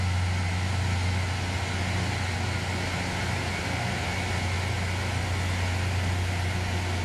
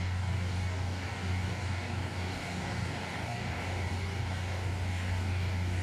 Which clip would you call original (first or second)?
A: first